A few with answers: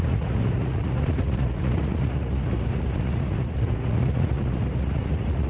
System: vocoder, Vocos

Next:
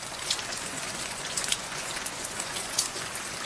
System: vocoder, Vocos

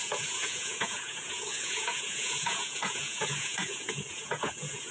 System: vocoder, Vocos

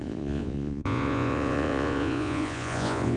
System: vocoder, Vocos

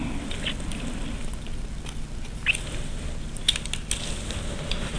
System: none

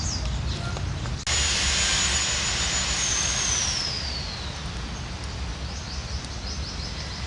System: none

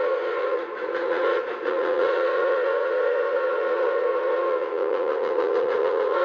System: vocoder, Vocos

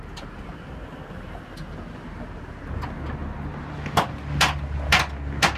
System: none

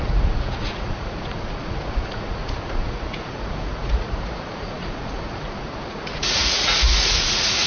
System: vocoder, Vocos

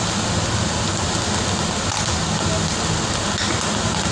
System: none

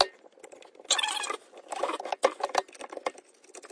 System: none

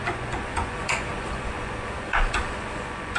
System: vocoder, Vocos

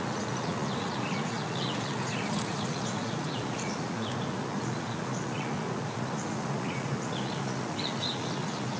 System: vocoder, Vocos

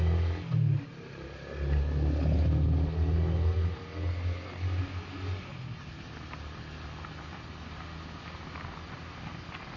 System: none